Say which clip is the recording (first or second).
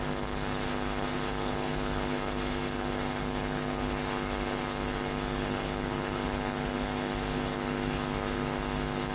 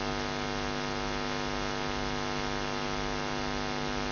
second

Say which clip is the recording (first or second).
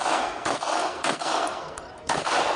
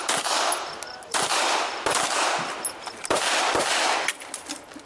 second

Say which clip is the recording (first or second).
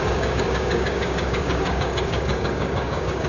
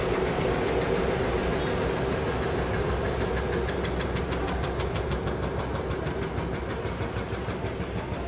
second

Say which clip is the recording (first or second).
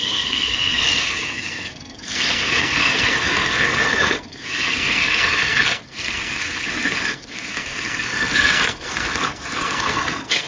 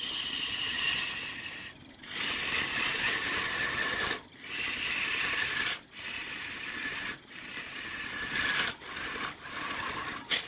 second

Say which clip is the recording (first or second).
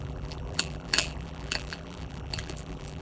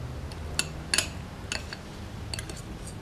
second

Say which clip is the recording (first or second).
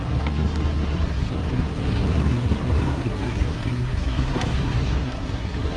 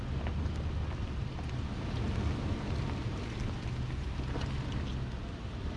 second